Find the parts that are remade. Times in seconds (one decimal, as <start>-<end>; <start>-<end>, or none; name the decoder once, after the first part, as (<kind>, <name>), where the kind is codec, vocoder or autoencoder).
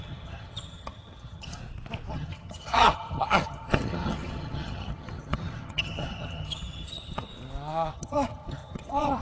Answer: 0.0-1.6 (vocoder, HiFi-GAN); 2.1-7.3; 7.9-9.2